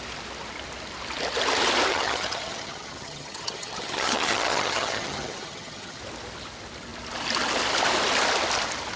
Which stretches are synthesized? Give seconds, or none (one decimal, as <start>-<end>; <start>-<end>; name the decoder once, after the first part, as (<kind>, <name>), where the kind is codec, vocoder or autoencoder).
1.9-6.0 (vocoder, HiFi-GAN)